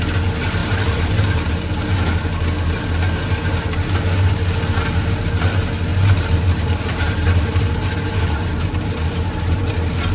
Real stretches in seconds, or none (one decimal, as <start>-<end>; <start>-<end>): 0.0-0.6; 1.5-5.9; 9.6-10.1